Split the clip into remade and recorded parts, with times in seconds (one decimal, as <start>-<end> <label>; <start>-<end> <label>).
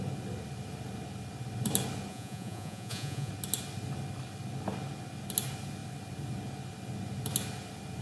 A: 0.0-2.1 recorded; 2.1-3.3 remade; 3.3-8.0 recorded